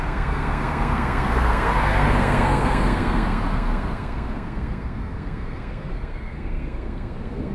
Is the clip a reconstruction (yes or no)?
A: yes